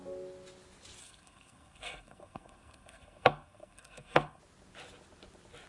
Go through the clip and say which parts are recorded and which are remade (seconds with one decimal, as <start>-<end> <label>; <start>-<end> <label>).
0.0-1.0 recorded; 1.0-4.4 remade; 4.4-5.7 recorded

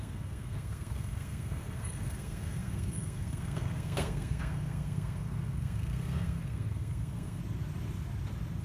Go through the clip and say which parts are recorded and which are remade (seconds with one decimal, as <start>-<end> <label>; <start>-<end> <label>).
0.0-7.4 remade; 7.4-8.6 recorded

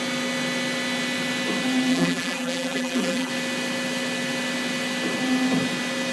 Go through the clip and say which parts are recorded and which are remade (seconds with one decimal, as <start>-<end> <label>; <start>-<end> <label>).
0.0-1.9 recorded; 1.9-3.3 remade; 3.3-6.1 recorded